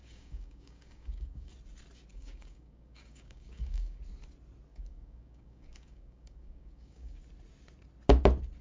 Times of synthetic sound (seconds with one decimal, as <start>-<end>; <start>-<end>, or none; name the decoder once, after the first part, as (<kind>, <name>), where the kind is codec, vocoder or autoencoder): 0.0-1.5 (codec, DAC); 2.1-4.0; 4.7-7.2